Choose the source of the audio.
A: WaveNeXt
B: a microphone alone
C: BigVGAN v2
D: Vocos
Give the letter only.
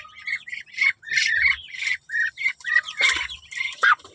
B